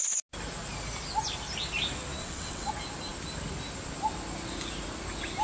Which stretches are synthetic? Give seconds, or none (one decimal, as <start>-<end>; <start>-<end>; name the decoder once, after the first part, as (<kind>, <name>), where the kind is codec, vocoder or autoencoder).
2.2-2.7 (vocoder, WaveNeXt)